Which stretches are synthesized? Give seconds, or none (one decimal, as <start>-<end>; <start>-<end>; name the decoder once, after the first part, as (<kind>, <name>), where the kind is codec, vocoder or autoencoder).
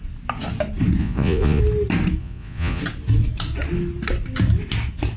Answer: 1.0-1.6 (vocoder, Vocos); 2.2-2.8